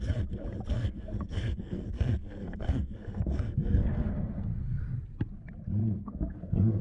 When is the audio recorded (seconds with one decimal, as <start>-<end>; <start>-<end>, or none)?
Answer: 0.0-0.7; 4.8-5.8